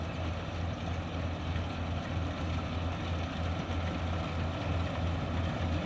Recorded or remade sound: recorded